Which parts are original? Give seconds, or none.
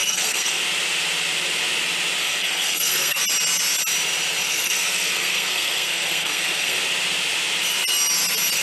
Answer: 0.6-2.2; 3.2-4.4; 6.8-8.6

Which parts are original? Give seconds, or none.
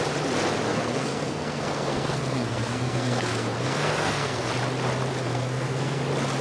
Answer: 0.0-0.7; 4.5-5.2; 6.0-6.4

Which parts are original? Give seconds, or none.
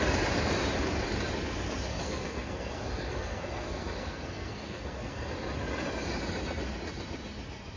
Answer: 0.0-1.9; 5.3-7.8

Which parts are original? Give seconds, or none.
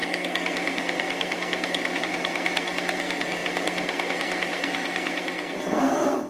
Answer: none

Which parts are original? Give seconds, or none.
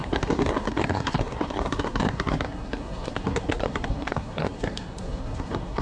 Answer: none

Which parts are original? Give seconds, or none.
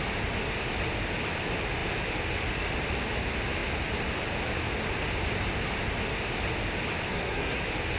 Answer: 0.0-7.1; 7.6-8.0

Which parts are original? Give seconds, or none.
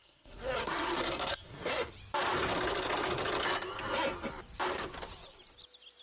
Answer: 1.9-6.0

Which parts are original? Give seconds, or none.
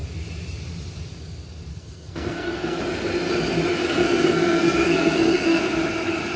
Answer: 0.0-1.7; 2.8-3.8; 5.6-6.4